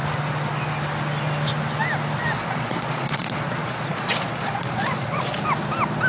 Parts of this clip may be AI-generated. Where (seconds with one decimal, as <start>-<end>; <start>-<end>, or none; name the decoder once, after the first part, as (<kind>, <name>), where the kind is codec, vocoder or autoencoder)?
2.4-5.4 (vocoder, Vocos)